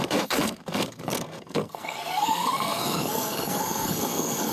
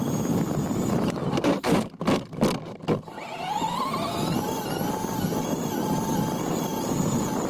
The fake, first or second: first